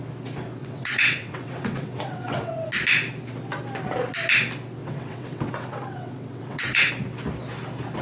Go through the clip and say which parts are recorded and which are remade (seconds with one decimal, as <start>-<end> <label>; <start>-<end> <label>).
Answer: 0.0-0.6 recorded; 0.6-2.7 remade; 2.7-4.8 recorded; 4.8-6.9 remade; 6.9-8.0 recorded